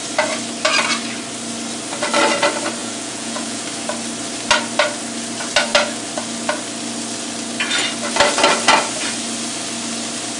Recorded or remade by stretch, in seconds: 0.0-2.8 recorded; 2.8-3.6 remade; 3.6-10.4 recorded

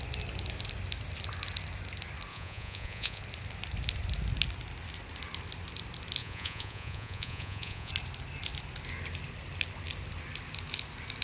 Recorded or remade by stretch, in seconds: 0.0-2.3 recorded; 2.3-3.2 remade; 3.2-6.2 recorded; 6.2-7.9 remade; 7.9-11.2 recorded

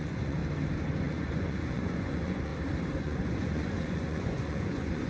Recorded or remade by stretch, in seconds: 0.0-0.4 remade; 0.4-1.0 recorded; 1.0-2.5 remade; 2.5-3.0 recorded; 3.0-5.1 remade

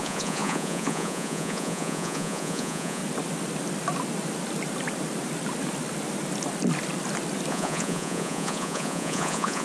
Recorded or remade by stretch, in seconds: 0.0-3.0 remade; 3.0-7.5 recorded; 7.5-9.6 remade

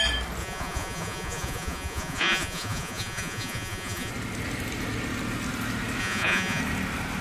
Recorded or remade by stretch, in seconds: 0.0-0.4 recorded; 0.4-4.1 remade; 4.1-6.0 recorded; 6.0-6.6 remade; 6.6-7.2 recorded

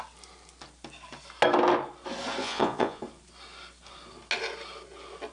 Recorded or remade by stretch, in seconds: 0.0-2.4 recorded; 2.4-3.0 remade; 3.0-5.3 recorded